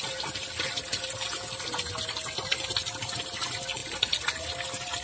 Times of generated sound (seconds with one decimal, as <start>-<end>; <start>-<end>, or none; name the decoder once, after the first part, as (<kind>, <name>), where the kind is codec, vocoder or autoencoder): none